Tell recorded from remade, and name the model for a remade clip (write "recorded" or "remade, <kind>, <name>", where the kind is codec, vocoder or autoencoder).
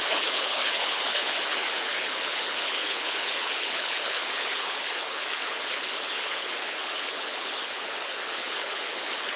remade, codec, HILCodec